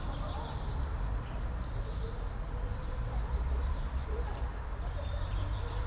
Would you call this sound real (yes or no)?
yes